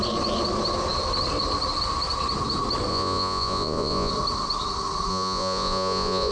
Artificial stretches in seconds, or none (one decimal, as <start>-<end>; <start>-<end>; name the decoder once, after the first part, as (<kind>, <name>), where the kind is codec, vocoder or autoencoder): 2.9-4.1 (vocoder, Vocos); 5.1-6.3